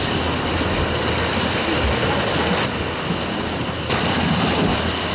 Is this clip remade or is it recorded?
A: recorded